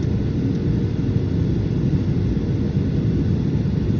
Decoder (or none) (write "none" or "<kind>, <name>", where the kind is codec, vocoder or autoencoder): none